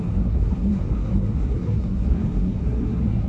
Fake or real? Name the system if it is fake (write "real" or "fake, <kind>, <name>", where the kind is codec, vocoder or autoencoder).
fake, codec, SNAC